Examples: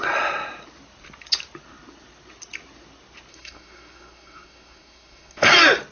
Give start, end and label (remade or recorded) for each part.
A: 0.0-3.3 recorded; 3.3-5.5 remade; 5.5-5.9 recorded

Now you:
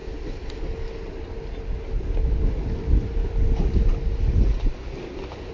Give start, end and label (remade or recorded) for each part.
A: 0.0-5.5 recorded

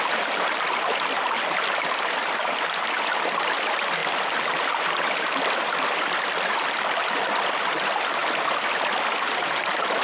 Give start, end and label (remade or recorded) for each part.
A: 0.0-4.0 remade; 4.0-4.7 recorded; 4.7-8.2 remade; 8.2-9.5 recorded; 9.5-10.0 remade

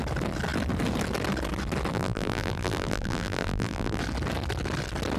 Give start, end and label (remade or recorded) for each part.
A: 0.0-1.9 recorded; 1.9-4.0 remade; 4.0-5.2 recorded

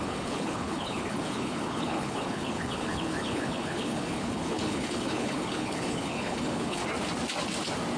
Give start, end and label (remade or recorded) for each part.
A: 0.0-6.8 remade; 6.8-8.0 recorded

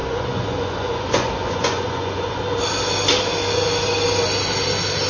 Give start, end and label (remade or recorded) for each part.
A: 0.0-2.4 remade; 2.4-5.1 recorded

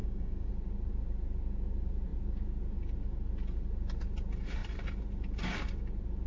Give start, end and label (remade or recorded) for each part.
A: 0.0-0.5 remade; 0.5-6.3 recorded

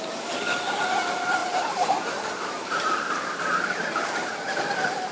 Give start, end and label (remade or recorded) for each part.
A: 0.0-1.4 remade; 1.4-2.5 recorded; 2.5-5.1 remade